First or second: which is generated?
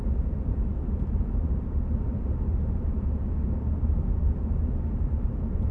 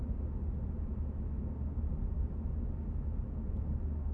first